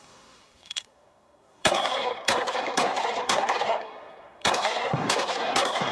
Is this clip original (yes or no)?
no